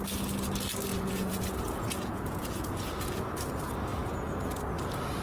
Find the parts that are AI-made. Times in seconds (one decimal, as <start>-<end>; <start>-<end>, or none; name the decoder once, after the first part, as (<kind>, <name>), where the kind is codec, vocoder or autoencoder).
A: 0.9-3.3 (vocoder, Vocos); 3.9-4.6